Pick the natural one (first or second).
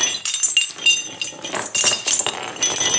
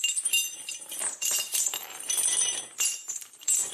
first